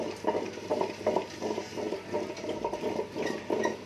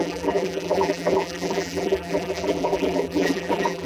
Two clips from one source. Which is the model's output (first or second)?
second